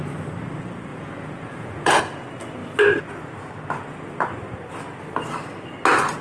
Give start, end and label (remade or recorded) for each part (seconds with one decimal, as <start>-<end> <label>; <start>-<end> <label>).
0.0-0.9 recorded; 0.9-2.0 remade; 2.0-6.2 recorded